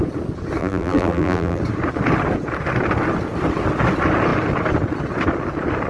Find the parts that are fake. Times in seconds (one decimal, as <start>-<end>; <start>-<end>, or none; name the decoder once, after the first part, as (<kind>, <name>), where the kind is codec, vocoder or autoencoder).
0.6-1.6 (vocoder, BigVGAN v2)